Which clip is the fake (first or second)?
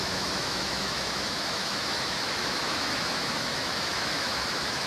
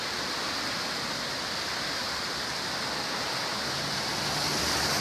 first